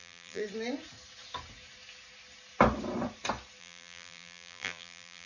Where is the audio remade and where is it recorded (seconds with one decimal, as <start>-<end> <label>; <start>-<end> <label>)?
0.0-0.4 remade; 0.4-3.6 recorded; 3.6-5.3 remade